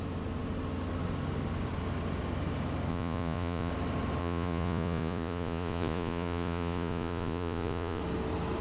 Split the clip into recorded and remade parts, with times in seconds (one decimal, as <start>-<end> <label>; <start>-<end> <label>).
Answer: 0.0-2.9 recorded; 2.9-3.7 remade; 3.7-4.2 recorded; 4.2-8.0 remade; 8.0-8.6 recorded